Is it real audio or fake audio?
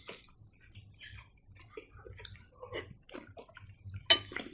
real